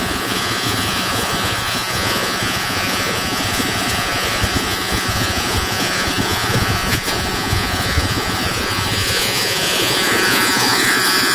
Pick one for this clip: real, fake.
fake